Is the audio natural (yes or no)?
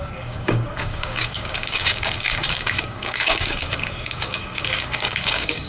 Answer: no